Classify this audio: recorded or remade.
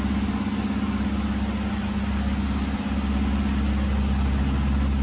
recorded